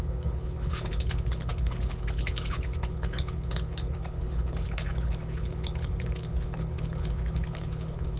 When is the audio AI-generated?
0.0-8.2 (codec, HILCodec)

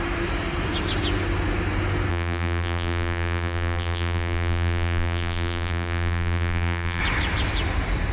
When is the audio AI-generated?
2.1-7.0 (vocoder, BigVGAN v2)

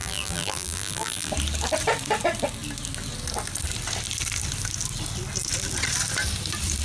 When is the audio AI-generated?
0.0-1.3 (vocoder, BigVGAN v2)

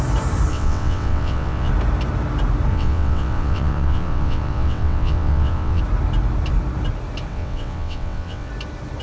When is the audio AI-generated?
0.5-1.7 (vocoder, WaveNeXt); 2.7-5.8; 7.3-8.5